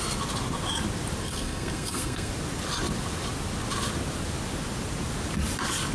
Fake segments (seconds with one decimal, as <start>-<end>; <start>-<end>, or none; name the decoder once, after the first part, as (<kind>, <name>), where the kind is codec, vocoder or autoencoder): 1.2-2.3 (codec, SNAC)